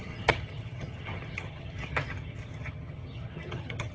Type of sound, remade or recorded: remade